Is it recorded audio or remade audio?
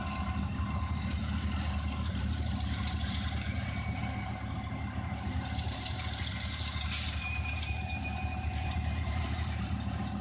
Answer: remade